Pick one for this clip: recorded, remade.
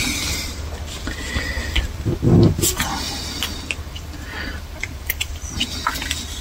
recorded